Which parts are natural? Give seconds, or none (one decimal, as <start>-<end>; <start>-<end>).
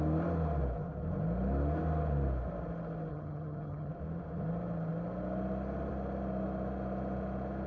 0.0-3.1; 3.9-7.7